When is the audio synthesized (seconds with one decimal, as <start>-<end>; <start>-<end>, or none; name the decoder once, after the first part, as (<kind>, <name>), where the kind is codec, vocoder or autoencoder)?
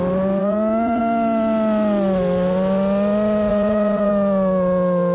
0.4-1.0 (vocoder, Vocos); 3.5-4.1